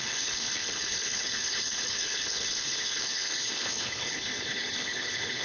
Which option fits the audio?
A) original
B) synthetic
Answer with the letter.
B